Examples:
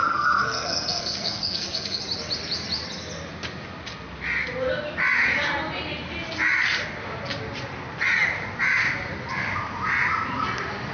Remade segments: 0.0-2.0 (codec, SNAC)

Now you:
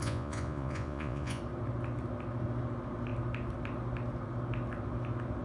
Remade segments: 0.0-1.4 (vocoder, Vocos)

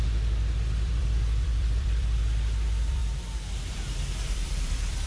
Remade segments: 0.0-3.0 (vocoder, BigVGAN v2); 3.7-5.1

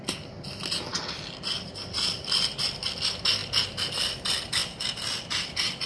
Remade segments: 0.9-3.0 (vocoder, BigVGAN v2); 4.6-5.9

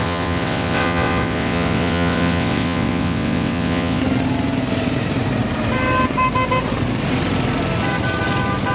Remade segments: 0.0-4.0 (vocoder, WaveNeXt)

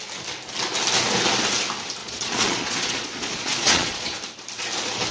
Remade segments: 2.0-4.1 (vocoder, Vocos)